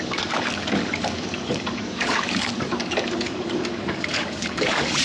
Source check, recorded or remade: remade